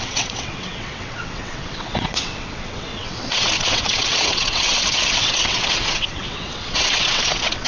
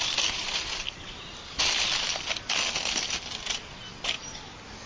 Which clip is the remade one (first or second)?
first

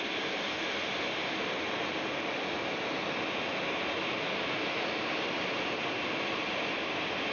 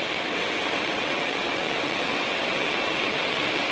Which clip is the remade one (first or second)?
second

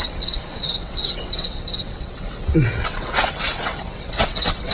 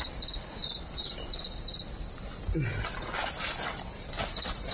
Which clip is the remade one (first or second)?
first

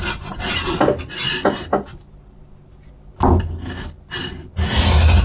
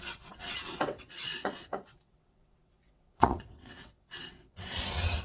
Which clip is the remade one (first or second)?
second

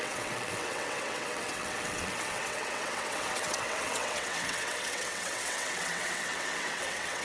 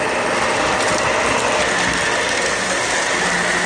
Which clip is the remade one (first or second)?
first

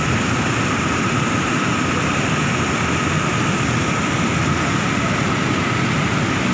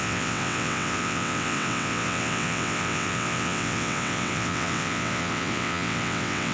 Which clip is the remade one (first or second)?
second